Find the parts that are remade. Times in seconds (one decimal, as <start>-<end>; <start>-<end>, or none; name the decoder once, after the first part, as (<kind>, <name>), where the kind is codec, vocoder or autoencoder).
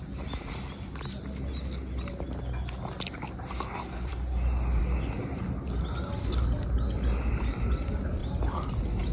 none